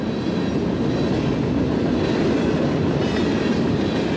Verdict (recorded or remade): recorded